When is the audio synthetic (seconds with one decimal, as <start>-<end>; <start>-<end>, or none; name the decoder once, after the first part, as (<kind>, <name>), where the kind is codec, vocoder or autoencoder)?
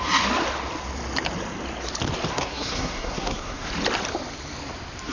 2.3-3.7 (codec, SNAC)